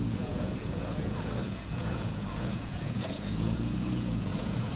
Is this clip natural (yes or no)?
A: no